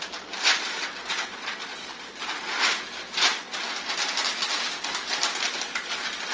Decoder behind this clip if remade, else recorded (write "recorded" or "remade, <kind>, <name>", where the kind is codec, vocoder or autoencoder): recorded